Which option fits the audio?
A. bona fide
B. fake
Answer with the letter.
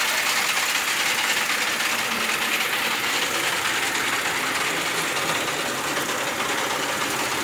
A